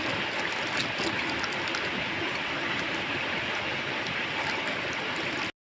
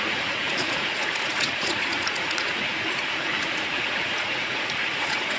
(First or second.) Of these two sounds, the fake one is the second